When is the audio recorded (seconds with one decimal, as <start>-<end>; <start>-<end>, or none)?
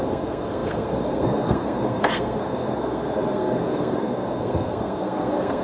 none